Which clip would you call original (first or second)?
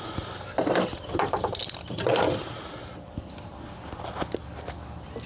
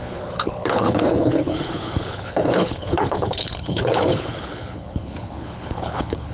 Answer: first